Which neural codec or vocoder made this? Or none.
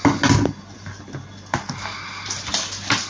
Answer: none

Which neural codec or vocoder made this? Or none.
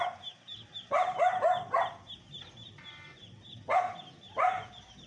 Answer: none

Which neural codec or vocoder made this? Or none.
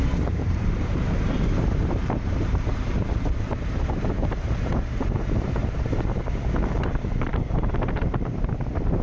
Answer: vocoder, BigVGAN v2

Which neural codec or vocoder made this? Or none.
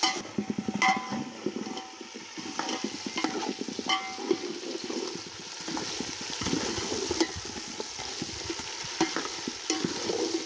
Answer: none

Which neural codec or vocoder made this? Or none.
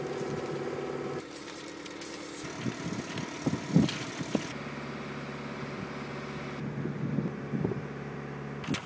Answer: none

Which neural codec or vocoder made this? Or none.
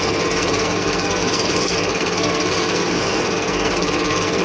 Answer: codec, SNAC